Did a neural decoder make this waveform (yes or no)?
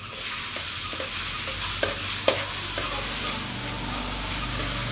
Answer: no